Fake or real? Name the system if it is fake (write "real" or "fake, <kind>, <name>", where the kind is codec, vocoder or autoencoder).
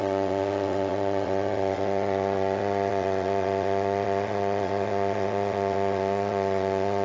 fake, vocoder, WaveNeXt